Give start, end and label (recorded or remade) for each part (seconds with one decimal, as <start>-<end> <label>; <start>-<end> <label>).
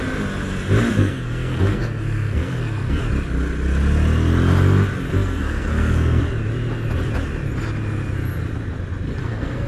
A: 0.0-0.9 recorded; 0.9-3.0 remade; 3.0-5.1 recorded; 5.1-6.2 remade; 6.2-9.2 recorded; 9.2-9.7 remade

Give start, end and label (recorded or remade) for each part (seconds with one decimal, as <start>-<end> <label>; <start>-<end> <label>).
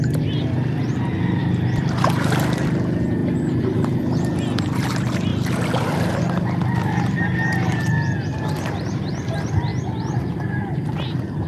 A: 0.0-1.4 recorded; 1.4-2.0 remade; 2.0-11.5 recorded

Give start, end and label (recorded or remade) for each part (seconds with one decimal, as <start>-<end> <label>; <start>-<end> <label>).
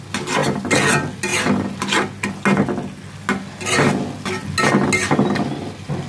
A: 0.0-6.1 recorded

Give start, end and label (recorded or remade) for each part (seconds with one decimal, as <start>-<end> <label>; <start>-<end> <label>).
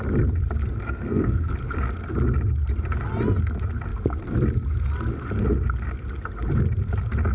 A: 0.0-0.8 recorded; 0.8-1.5 remade; 1.5-7.3 recorded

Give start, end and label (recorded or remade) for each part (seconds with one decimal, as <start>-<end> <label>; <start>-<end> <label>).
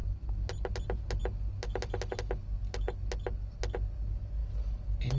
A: 0.0-5.2 recorded